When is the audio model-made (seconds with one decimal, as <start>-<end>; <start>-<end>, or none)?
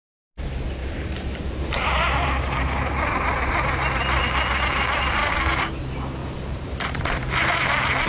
0.8-4.2; 6.2-7.5